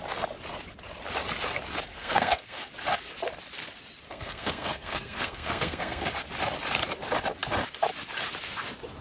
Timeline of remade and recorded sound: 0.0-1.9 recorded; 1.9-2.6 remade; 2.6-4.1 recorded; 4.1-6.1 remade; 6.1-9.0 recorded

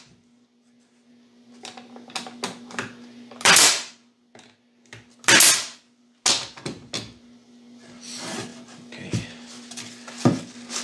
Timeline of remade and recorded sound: 0.0-10.8 recorded

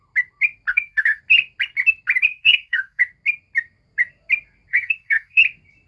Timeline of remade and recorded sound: 0.0-0.7 recorded; 0.7-1.2 remade; 1.2-2.3 recorded; 2.3-3.0 remade; 3.0-4.7 recorded; 4.7-5.4 remade; 5.4-5.9 recorded

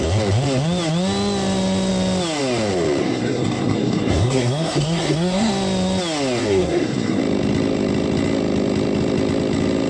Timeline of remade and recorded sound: 0.0-3.0 recorded; 3.0-5.5 remade; 5.5-6.4 recorded; 6.4-7.2 remade; 7.2-9.9 recorded

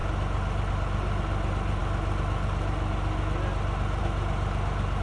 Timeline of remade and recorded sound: 0.0-5.0 recorded

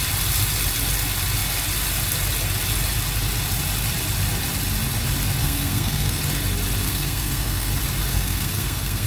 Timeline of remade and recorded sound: 0.0-5.4 recorded; 5.4-6.2 remade; 6.2-6.8 recorded; 6.8-7.7 remade; 7.7-8.1 recorded; 8.1-9.1 remade